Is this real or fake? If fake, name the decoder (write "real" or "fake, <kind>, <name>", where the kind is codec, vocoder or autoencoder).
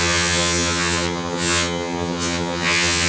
fake, vocoder, HiFi-GAN